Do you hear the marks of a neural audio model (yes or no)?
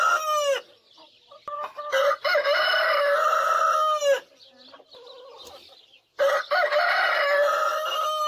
no